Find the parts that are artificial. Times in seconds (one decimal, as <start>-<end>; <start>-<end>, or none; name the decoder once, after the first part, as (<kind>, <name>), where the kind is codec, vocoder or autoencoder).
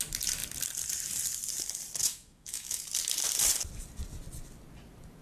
2.0-2.8 (autoencoder, DAC-VAE)